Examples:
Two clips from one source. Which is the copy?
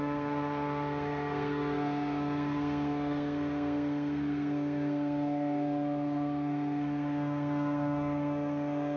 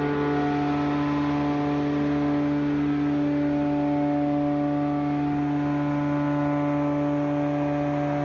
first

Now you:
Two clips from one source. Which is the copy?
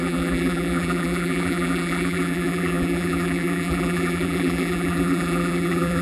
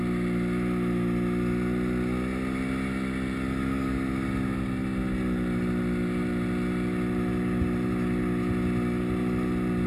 first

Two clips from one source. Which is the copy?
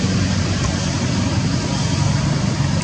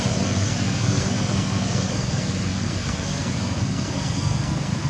second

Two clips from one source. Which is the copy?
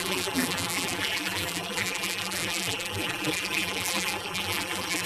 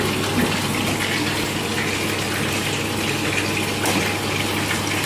first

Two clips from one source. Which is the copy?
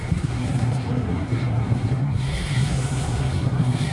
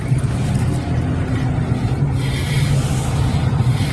first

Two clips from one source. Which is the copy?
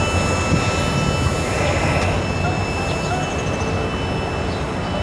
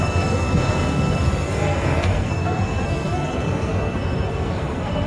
second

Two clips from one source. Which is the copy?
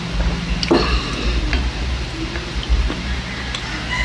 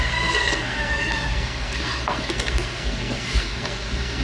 second